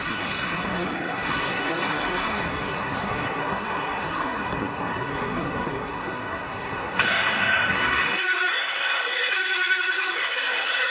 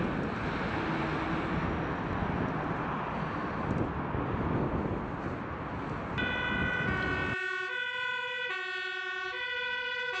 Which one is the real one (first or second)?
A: second